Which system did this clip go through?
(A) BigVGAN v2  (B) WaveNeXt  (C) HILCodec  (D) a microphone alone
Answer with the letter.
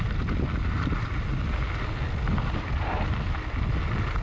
D